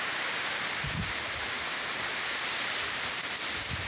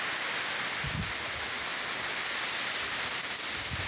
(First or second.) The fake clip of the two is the first